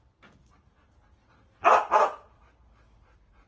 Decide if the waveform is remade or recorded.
recorded